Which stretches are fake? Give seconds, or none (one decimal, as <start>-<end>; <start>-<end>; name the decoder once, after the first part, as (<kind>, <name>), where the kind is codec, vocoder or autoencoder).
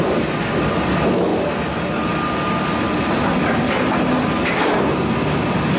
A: none